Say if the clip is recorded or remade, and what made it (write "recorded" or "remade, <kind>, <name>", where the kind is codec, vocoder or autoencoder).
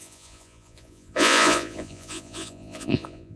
remade, vocoder, Vocos